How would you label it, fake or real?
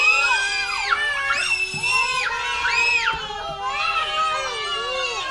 real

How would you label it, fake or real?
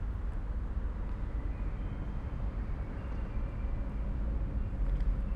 real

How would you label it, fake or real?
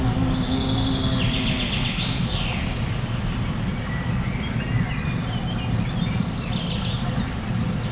real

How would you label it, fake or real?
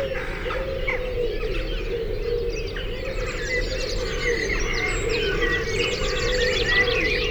real